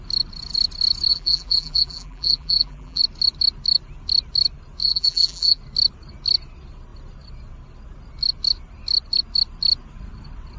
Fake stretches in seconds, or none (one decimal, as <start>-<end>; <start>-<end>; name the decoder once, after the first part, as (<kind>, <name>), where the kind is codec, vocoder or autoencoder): 1.1-3.0 (vocoder, BigVGAN v2); 4.8-5.6